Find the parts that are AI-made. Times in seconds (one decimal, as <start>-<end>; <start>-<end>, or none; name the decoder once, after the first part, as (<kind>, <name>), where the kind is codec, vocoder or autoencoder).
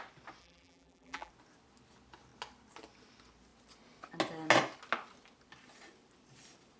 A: 0.4-1.3 (vocoder, BigVGAN v2)